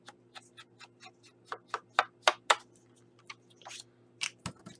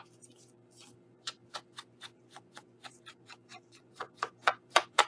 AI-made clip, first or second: second